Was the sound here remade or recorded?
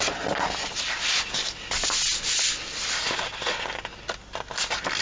recorded